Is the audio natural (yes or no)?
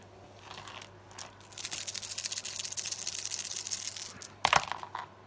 yes